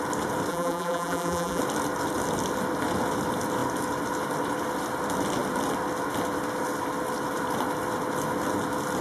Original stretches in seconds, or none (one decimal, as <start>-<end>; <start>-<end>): 0.0-0.5; 1.6-9.0

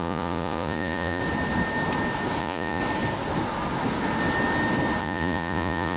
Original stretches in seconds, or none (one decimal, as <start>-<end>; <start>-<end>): 1.2-2.4; 2.8-5.0

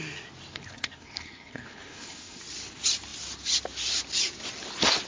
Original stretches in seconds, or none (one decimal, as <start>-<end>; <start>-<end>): 0.0-0.5; 2.4-5.1

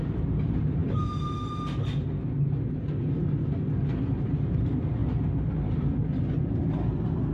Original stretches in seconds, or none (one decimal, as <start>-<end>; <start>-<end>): 0.0-7.3